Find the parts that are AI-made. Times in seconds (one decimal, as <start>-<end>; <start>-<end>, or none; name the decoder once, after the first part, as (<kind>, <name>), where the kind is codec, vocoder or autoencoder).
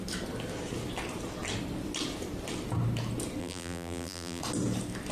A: 3.4-4.4 (vocoder, BigVGAN v2)